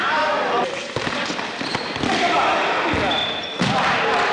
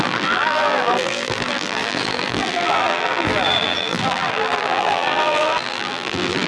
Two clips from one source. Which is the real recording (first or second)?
first